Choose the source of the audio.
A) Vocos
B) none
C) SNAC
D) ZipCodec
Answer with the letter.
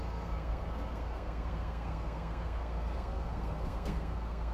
C